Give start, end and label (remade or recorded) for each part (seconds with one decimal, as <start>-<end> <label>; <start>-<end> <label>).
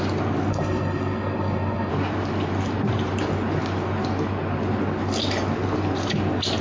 0.0-0.5 recorded; 0.5-1.9 remade; 1.9-6.6 recorded